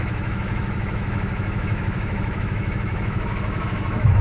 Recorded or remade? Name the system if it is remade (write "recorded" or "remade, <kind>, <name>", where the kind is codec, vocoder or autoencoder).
remade, autoencoder, DAC-VAE